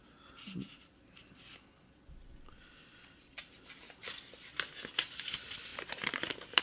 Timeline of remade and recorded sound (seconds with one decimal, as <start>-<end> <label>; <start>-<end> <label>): 0.0-5.7 recorded; 5.7-6.6 remade